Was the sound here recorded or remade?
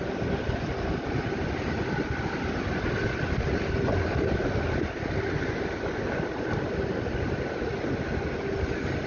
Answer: recorded